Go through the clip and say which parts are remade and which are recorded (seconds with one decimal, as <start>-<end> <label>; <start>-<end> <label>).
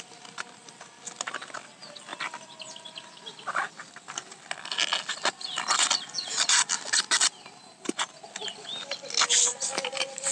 0.0-10.3 recorded